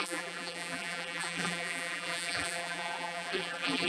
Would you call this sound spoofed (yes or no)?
yes